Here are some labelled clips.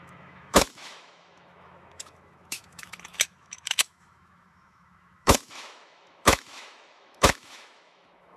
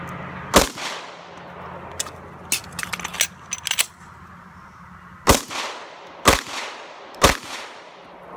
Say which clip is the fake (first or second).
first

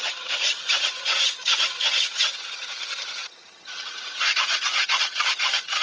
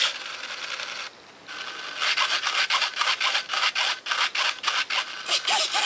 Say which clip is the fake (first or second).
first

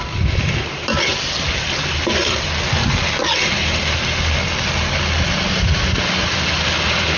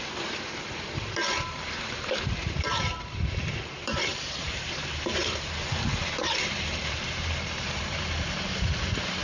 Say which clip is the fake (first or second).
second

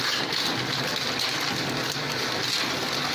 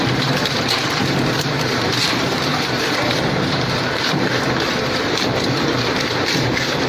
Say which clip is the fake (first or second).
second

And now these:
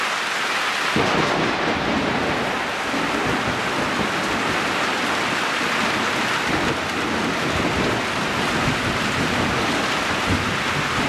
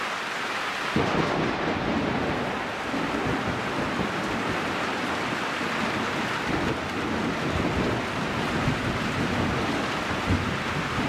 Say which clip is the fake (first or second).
second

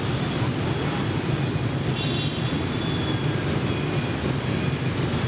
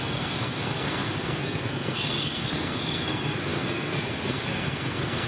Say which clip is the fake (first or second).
second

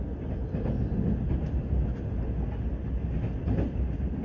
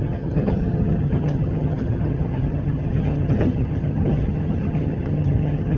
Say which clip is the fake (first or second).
second